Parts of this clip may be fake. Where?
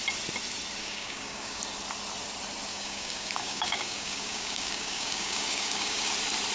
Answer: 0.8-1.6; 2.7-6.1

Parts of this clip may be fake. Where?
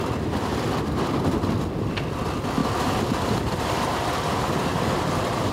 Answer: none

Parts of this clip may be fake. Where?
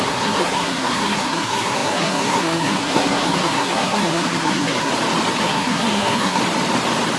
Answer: 0.0-4.9; 5.4-6.4